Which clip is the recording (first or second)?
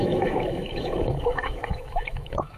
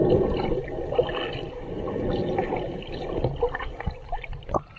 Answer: second